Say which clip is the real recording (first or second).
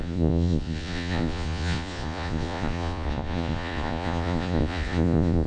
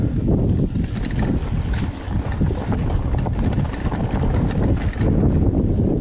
second